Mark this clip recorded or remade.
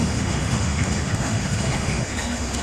remade